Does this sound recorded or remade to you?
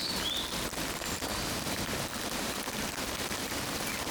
remade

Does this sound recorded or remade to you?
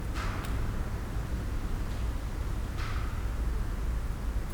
recorded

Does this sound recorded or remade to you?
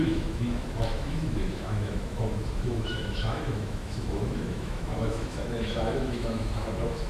remade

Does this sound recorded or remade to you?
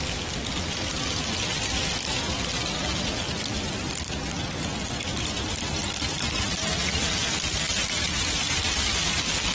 recorded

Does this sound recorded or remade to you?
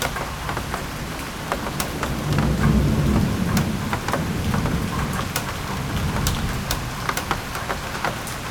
recorded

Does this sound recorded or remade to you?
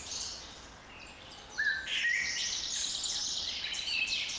recorded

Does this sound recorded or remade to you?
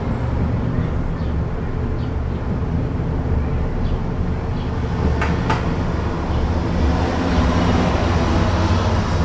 recorded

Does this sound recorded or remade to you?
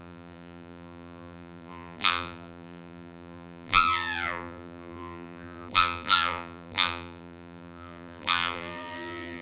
remade